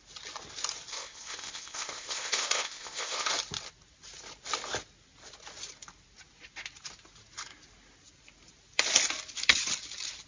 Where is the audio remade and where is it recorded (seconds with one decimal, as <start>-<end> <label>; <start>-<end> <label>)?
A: 0.0-0.9 recorded; 0.9-3.3 remade; 3.3-10.3 recorded